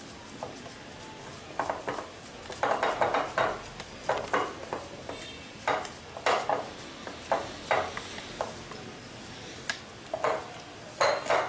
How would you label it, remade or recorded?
recorded